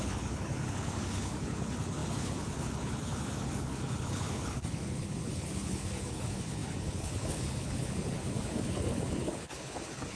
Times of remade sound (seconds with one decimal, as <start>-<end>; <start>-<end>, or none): 0.0-10.2